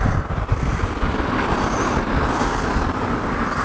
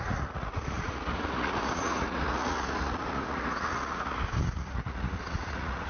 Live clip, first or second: first